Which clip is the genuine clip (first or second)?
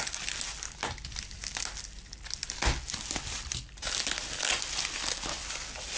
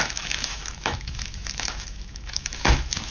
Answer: first